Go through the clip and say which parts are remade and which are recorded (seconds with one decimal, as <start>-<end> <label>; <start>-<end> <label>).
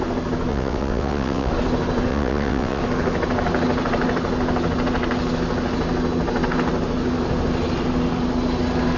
0.0-0.5 recorded; 0.5-1.5 remade; 1.5-2.1 recorded; 2.1-2.8 remade; 2.8-9.0 recorded